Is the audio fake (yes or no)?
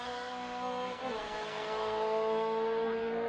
yes